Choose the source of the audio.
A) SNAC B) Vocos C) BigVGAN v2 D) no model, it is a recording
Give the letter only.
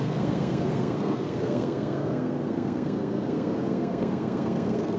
A